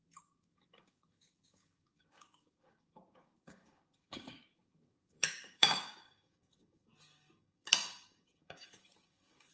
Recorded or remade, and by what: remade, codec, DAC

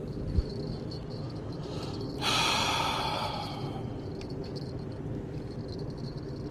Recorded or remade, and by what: recorded